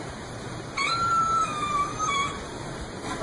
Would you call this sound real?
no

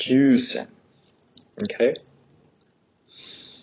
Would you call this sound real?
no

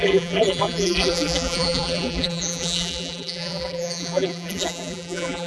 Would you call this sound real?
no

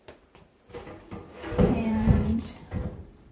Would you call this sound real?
no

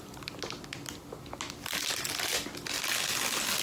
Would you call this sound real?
yes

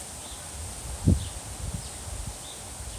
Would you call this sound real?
yes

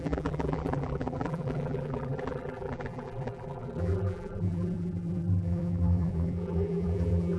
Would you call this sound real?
no